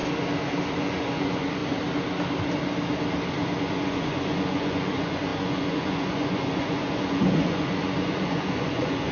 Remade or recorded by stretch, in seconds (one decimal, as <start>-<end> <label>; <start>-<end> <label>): 0.0-0.8 recorded; 0.8-1.6 remade; 1.6-3.6 recorded; 3.6-9.1 remade